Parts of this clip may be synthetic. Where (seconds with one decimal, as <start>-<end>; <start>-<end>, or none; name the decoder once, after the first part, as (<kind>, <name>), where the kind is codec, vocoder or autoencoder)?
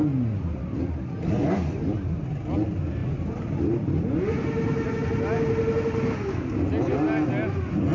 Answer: none